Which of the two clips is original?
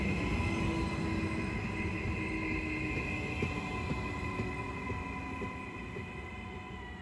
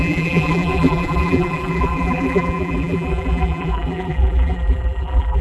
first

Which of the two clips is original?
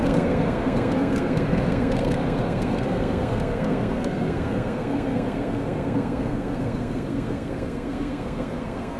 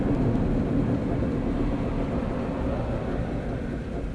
second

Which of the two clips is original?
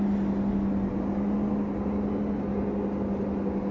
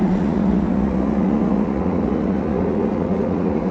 first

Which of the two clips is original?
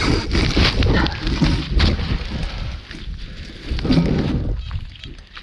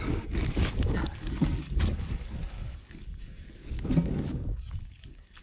first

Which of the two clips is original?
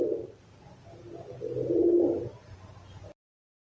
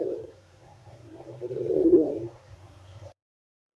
first